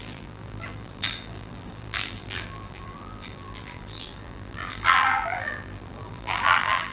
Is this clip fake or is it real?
fake